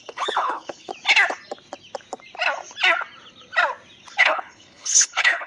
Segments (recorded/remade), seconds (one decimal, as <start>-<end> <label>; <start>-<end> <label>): 0.0-0.9 remade; 0.9-4.2 recorded; 4.2-5.5 remade